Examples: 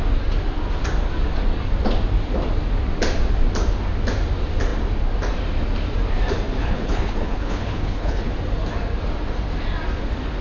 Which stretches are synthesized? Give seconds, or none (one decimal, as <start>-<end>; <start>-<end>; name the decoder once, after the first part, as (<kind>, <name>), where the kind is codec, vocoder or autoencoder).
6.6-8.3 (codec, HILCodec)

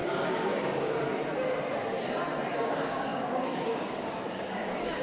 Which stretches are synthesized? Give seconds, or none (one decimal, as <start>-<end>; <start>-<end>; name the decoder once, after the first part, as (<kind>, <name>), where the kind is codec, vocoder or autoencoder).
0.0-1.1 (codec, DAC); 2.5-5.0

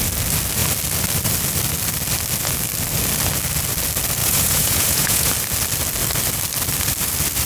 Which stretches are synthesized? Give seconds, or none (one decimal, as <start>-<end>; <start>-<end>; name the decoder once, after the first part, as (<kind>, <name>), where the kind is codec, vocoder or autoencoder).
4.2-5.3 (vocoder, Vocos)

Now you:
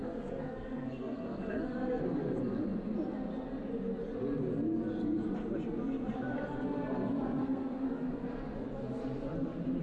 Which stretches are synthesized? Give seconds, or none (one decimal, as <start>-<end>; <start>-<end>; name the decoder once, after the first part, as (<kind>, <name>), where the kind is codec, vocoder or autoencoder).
0.0-2.0 (codec, SNAC); 7.4-8.2

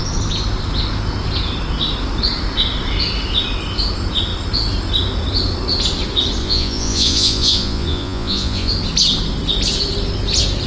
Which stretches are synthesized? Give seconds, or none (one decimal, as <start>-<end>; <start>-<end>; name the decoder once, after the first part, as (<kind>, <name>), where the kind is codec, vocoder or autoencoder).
6.4-8.7 (vocoder, Vocos)